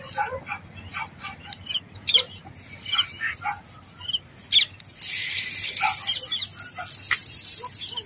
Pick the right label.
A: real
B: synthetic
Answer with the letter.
A